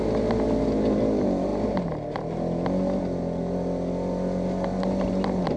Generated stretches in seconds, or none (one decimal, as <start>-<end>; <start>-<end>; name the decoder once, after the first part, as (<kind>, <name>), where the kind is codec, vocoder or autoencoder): none